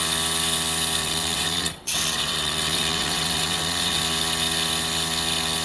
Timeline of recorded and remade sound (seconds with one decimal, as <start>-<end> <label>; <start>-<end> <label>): 0.0-1.0 recorded; 1.0-4.0 remade; 4.0-5.6 recorded